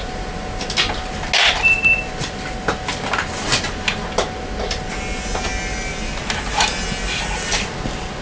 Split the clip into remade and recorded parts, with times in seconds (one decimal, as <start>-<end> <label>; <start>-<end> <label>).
0.0-8.2 recorded